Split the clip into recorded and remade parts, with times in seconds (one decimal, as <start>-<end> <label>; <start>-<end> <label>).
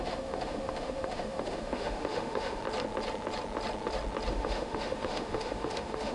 0.0-2.6 remade; 2.6-4.3 recorded; 4.3-6.1 remade